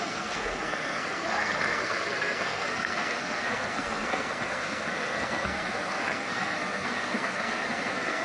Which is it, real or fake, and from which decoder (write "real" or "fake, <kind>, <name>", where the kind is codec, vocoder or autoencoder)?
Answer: fake, codec, SNAC